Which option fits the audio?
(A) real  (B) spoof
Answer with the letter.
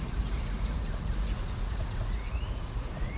B